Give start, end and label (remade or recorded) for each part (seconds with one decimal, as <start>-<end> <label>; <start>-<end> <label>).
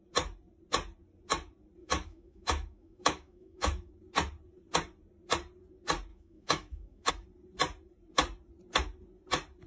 0.0-1.8 recorded; 1.8-3.9 remade; 3.9-6.1 recorded; 6.1-7.1 remade; 7.1-9.7 recorded